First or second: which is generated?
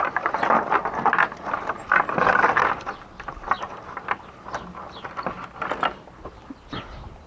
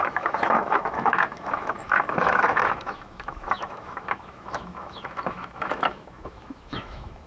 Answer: second